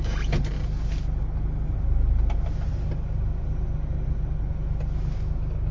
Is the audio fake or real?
real